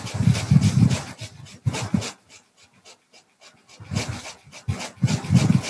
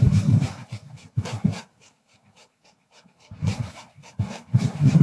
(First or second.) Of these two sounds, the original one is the first